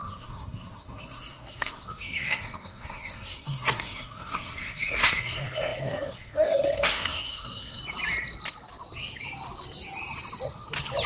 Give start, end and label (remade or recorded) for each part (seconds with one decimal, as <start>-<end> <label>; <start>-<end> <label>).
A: 0.0-7.8 remade; 7.8-11.1 recorded